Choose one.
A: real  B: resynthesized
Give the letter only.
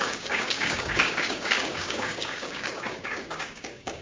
B